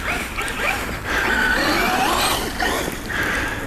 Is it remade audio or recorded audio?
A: recorded